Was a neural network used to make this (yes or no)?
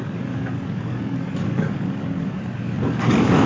yes